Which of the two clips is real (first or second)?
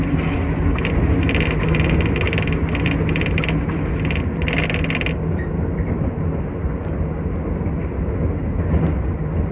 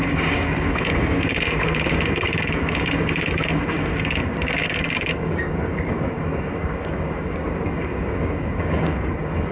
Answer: first